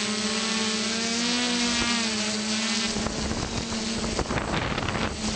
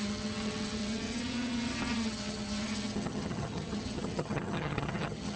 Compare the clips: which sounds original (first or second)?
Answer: first